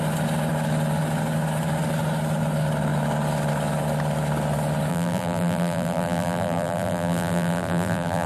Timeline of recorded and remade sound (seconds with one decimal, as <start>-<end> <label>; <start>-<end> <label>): 0.0-4.9 recorded; 4.9-8.3 remade